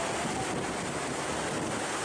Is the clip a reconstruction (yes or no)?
no